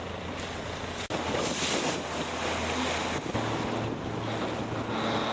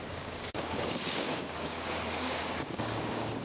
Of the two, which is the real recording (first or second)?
first